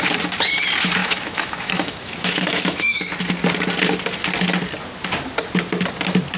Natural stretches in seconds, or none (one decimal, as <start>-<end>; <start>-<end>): 0.0-1.0; 3.0-6.4